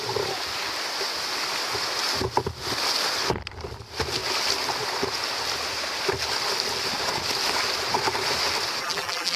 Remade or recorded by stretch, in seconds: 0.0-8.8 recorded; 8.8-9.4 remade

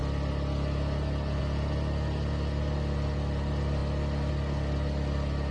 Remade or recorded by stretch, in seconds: 0.0-5.5 recorded

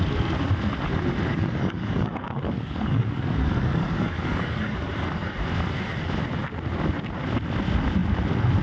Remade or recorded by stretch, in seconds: 0.0-1.3 recorded; 1.3-4.9 remade; 4.9-8.6 recorded

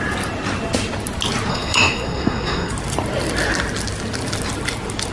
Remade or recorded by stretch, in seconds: 0.0-1.5 recorded; 1.5-2.7 remade; 2.7-5.1 recorded

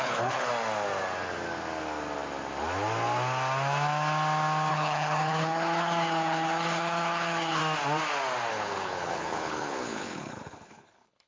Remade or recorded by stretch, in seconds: 0.0-0.5 remade; 0.5-4.7 recorded; 4.7-7.6 remade; 7.6-8.5 recorded; 8.5-11.3 remade